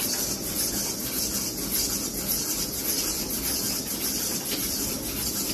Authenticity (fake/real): real